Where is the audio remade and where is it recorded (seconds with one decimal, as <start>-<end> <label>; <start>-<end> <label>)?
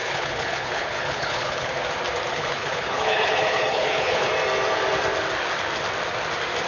0.0-1.7 remade; 1.7-2.3 recorded; 2.3-4.3 remade; 4.3-6.7 recorded